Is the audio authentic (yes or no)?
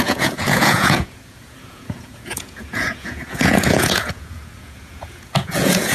no